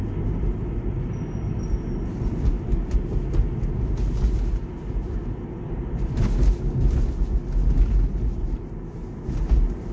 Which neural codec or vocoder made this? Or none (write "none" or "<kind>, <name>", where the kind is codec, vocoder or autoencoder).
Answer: none